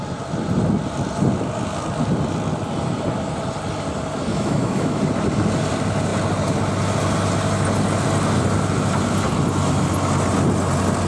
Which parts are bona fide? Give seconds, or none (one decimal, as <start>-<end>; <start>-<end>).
0.0-4.3; 5.0-11.1